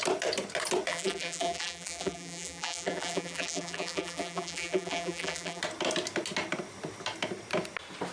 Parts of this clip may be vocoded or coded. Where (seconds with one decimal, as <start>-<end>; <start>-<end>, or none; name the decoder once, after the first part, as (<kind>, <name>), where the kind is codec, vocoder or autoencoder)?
0.9-5.6 (vocoder, BigVGAN v2)